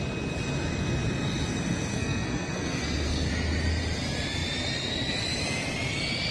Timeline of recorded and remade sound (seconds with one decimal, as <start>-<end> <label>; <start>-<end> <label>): 0.0-1.9 recorded; 1.9-3.3 remade; 3.3-6.3 recorded

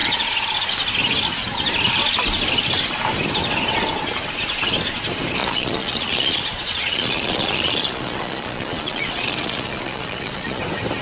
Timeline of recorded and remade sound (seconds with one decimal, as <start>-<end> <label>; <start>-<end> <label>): 0.0-5.4 recorded; 5.4-10.6 remade; 10.6-11.0 recorded